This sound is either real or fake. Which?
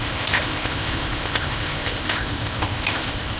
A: fake